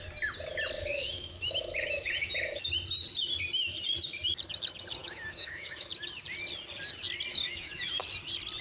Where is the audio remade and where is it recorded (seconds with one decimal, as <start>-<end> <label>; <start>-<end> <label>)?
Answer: 0.0-0.9 recorded; 0.9-2.6 remade; 2.6-5.0 recorded; 5.0-5.9 remade; 5.9-7.3 recorded; 7.3-8.0 remade; 8.0-8.6 recorded